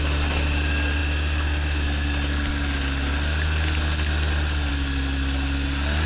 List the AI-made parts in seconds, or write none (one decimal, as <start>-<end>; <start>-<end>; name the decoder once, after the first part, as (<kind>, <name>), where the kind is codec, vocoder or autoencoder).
none